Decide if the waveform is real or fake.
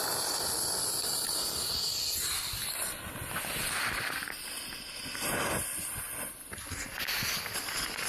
real